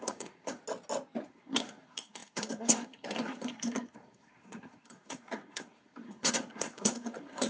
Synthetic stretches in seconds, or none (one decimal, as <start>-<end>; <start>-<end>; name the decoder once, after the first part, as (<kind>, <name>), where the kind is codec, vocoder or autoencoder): 0.0-0.6 (codec, SNAC); 1.2-7.5